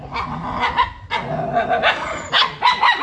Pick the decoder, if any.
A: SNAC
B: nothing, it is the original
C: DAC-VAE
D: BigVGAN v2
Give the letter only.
B